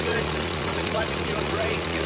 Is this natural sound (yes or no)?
no